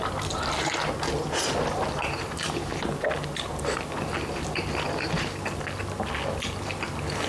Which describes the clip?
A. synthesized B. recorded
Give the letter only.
B